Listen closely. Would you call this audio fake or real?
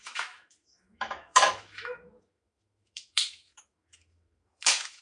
fake